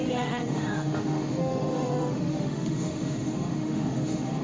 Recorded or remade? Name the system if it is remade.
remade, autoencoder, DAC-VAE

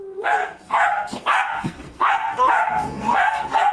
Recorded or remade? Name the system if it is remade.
remade, codec, SNAC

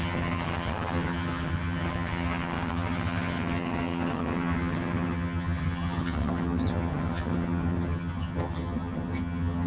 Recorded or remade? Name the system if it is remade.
remade, vocoder, HiFi-GAN